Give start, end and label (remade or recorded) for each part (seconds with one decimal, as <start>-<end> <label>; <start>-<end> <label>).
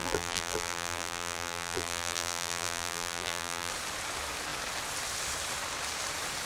0.0-3.7 remade; 3.7-6.5 recorded